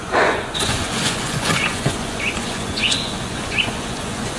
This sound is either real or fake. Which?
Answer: fake